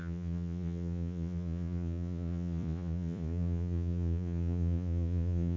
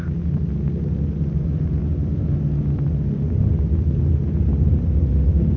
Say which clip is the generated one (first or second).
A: first